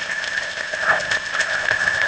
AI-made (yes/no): yes